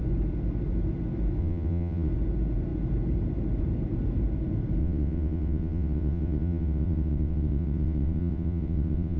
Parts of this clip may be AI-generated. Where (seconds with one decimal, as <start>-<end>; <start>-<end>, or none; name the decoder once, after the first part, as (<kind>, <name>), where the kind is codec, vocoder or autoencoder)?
1.4-2.1 (vocoder, WaveNeXt); 4.8-9.2